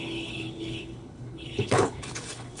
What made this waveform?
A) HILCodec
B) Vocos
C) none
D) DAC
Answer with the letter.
A